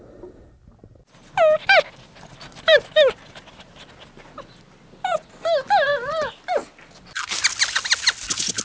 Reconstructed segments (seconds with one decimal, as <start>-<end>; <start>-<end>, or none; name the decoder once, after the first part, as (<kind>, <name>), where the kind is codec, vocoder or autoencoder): none